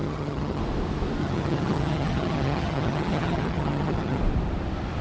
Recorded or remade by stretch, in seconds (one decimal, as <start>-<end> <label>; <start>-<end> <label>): 0.0-0.6 remade; 0.6-1.2 recorded; 1.2-4.2 remade; 4.2-5.0 recorded